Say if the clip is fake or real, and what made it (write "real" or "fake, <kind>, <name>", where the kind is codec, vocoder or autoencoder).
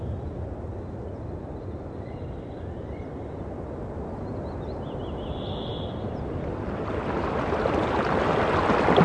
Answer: real